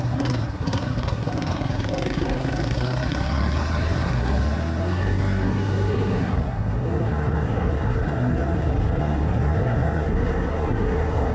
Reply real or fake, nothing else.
fake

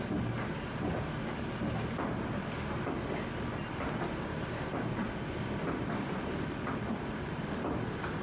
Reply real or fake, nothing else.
real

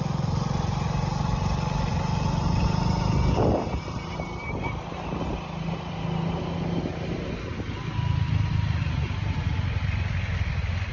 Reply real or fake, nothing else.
real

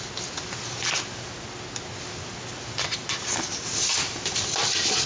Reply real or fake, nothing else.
real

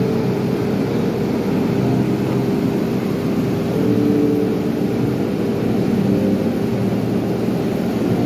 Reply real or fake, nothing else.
real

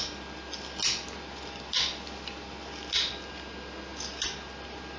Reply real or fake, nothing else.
real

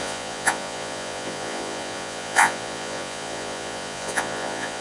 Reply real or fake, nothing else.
fake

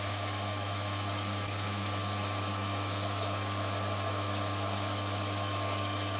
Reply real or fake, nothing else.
fake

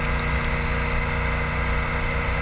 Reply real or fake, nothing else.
real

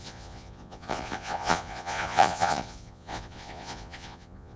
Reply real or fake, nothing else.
fake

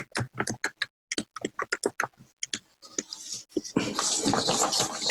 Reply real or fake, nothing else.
real